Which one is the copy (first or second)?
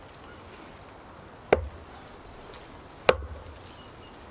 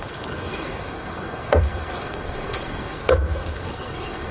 second